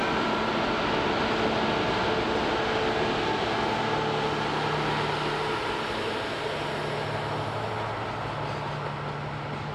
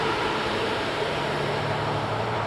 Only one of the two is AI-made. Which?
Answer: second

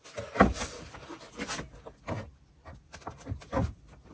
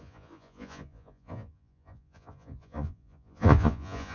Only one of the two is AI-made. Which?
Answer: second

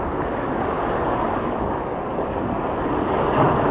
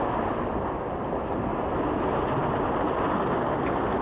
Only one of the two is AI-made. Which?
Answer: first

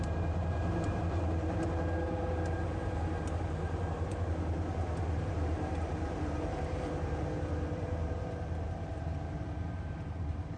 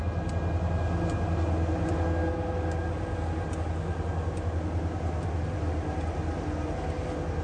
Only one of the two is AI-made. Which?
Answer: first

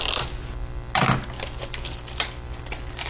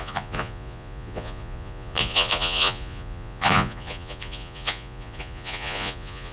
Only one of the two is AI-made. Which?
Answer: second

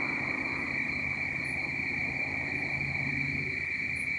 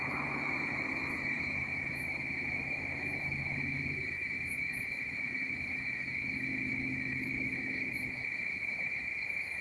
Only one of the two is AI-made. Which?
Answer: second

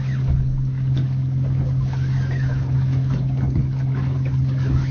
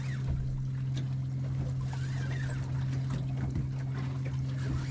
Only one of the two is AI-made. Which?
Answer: first